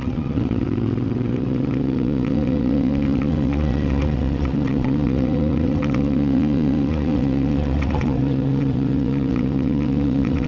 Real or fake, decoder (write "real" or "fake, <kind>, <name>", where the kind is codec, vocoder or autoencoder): fake, vocoder, WaveNeXt